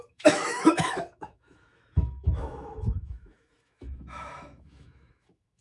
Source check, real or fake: fake